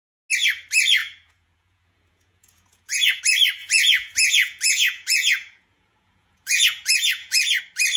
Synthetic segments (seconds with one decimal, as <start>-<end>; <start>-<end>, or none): 1.0-3.2; 3.6-7.6